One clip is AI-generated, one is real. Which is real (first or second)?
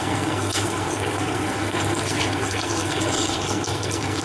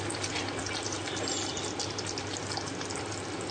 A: second